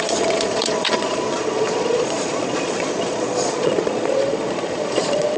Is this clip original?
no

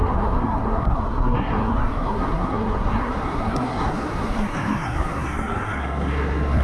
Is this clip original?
no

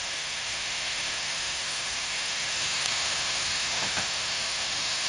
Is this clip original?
no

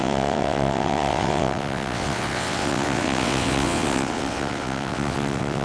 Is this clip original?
no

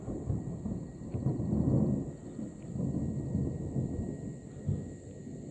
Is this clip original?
yes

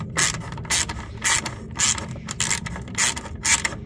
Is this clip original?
yes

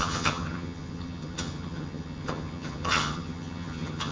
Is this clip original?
no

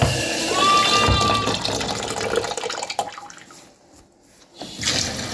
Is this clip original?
yes